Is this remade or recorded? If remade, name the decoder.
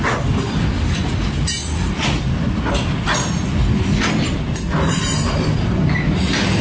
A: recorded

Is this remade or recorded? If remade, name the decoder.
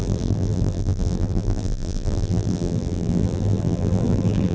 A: remade, vocoder, BigVGAN v2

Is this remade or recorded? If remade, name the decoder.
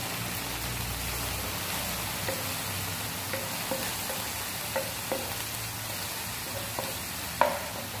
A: recorded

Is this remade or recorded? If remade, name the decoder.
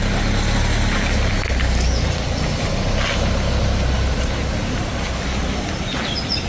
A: recorded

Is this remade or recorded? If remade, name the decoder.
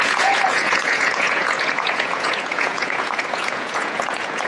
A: remade, vocoder, Vocos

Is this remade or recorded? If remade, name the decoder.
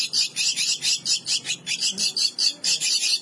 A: recorded